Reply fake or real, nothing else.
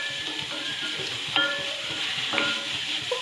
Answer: fake